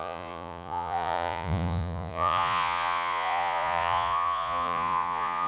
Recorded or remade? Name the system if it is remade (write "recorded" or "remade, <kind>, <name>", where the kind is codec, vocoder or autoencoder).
remade, vocoder, Vocos